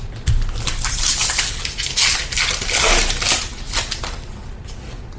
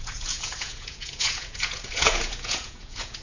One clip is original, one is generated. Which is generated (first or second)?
second